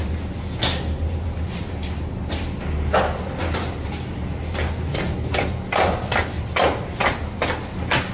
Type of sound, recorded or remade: recorded